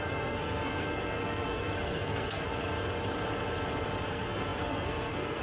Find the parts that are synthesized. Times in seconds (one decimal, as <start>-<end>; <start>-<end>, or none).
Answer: 0.0-2.5; 4.1-5.4